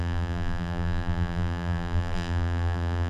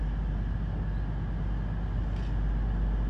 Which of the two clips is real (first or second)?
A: second